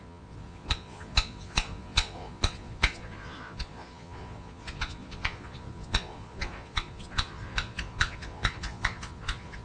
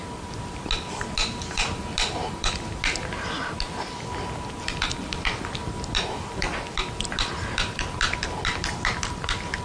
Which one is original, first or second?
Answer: second